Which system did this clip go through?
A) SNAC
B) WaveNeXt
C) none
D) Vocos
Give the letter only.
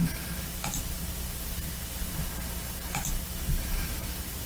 C